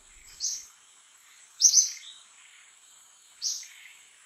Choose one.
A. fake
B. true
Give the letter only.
A